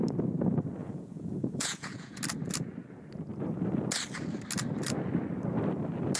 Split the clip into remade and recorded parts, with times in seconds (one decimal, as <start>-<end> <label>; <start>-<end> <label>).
0.0-0.8 recorded; 0.8-2.2 remade; 2.2-6.2 recorded